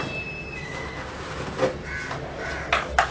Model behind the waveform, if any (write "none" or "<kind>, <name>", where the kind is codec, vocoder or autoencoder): none